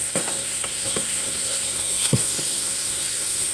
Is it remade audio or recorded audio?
remade